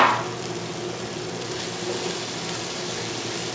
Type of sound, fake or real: real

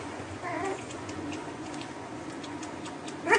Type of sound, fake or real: fake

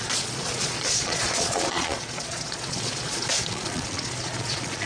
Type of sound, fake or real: fake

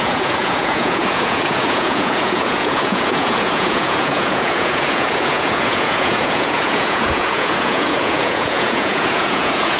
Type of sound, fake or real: fake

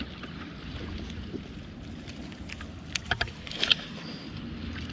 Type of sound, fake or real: real